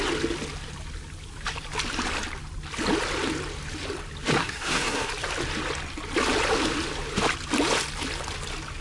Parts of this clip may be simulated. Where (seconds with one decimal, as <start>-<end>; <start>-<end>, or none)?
4.4-5.1